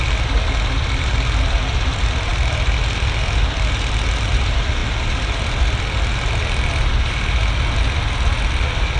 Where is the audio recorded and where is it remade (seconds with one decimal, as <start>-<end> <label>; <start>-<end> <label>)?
0.0-9.0 recorded